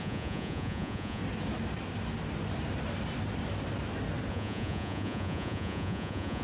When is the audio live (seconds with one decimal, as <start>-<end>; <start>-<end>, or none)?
1.2-4.3